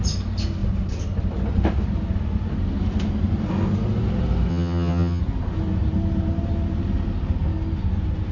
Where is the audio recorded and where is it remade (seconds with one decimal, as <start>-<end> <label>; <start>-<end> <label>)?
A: 0.0-4.5 recorded; 4.5-5.2 remade; 5.2-8.3 recorded